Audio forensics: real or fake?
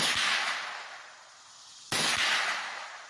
real